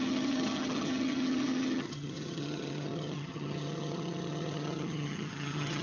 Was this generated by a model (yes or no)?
yes